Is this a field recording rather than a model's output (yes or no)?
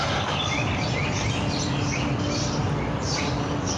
yes